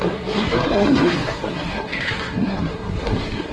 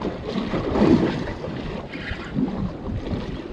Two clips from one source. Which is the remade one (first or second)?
first